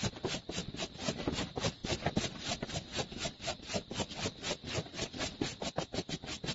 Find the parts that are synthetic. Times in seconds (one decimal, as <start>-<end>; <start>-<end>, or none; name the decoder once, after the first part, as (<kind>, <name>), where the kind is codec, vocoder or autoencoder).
none